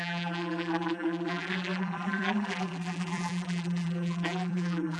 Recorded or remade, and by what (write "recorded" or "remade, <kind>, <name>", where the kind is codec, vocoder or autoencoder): remade, vocoder, BigVGAN v2